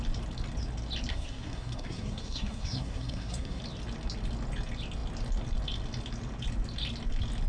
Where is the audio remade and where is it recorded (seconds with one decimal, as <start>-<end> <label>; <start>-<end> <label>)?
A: 0.0-1.1 recorded; 1.1-3.6 remade; 3.6-7.5 recorded